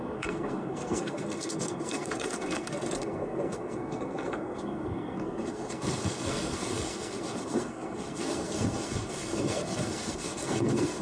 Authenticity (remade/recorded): remade